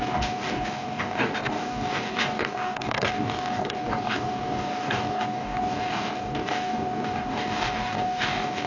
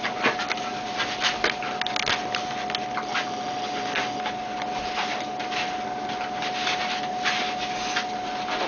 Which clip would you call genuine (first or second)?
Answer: second